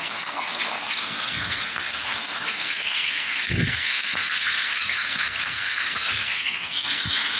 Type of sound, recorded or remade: remade